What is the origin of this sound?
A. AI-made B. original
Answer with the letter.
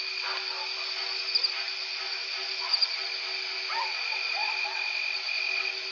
B